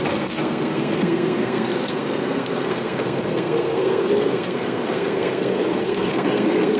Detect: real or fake fake